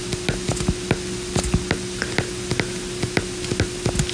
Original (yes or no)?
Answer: yes